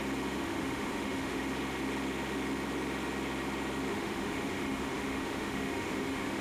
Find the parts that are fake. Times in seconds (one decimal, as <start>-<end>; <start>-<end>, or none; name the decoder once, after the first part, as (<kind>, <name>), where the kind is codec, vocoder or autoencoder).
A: 0.4-1.4 (autoencoder, DAC-VAE); 3.9-6.4